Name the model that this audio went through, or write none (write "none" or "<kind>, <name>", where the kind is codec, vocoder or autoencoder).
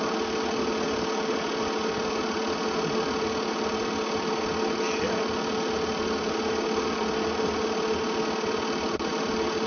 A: none